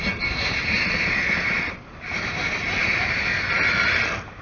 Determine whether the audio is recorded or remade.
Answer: remade